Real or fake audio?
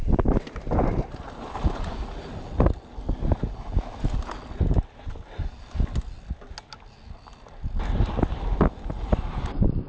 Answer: real